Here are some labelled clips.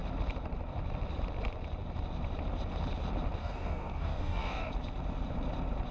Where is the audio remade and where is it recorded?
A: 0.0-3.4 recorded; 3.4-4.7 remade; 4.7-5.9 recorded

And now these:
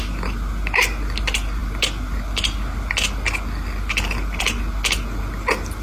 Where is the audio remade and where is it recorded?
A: 0.0-5.8 recorded

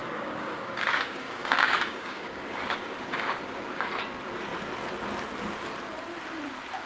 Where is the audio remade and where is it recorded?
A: 0.0-3.9 remade; 3.9-6.9 recorded

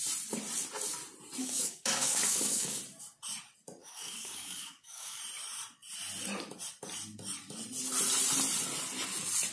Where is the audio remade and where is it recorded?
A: 0.0-1.4 recorded; 1.4-2.8 remade; 2.8-3.8 recorded; 3.8-5.2 remade; 5.2-9.5 recorded

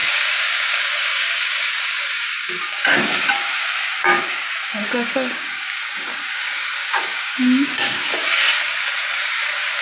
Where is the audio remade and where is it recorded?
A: 0.0-8.4 remade; 8.4-9.2 recorded; 9.2-9.8 remade

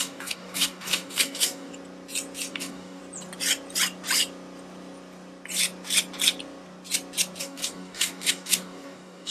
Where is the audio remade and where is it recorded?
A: 0.0-1.7 remade; 1.7-2.5 recorded; 2.5-3.0 remade; 3.0-7.4 recorded; 7.4-9.3 remade

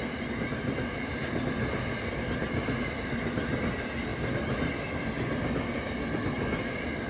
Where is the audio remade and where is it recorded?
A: 0.0-7.1 recorded

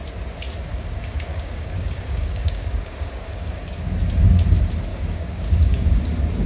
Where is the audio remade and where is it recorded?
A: 0.0-0.7 recorded; 0.7-3.9 remade; 3.9-4.9 recorded; 4.9-6.0 remade; 6.0-6.5 recorded